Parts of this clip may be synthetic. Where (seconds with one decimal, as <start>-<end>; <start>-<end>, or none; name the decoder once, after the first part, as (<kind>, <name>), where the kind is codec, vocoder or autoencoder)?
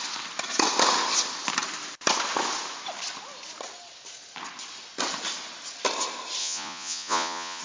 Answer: 6.4-7.6 (vocoder, Vocos)